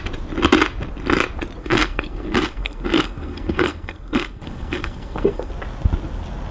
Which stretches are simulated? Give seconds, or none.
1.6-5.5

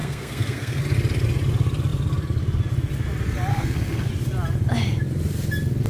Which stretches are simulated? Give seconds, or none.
0.0-0.8; 3.5-4.1

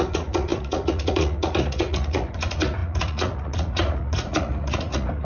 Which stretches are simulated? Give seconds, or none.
0.0-5.2

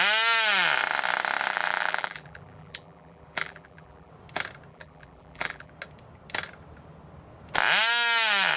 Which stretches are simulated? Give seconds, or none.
1.5-4.1; 4.7-5.7

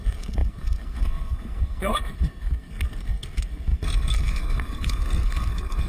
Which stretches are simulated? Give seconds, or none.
0.0-5.9

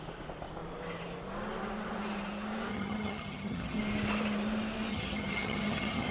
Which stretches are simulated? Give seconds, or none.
2.7-3.8; 4.9-6.1

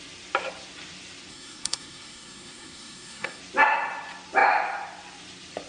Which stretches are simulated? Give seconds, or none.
1.3-3.4

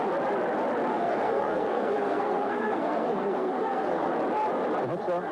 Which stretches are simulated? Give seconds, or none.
0.9-4.1